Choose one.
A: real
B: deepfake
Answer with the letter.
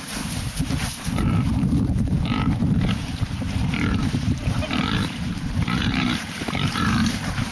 B